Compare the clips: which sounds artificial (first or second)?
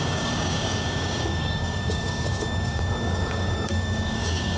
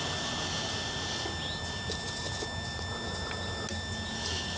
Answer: first